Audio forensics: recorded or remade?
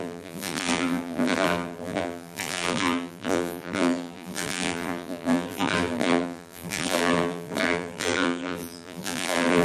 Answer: remade